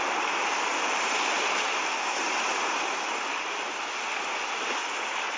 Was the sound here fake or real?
real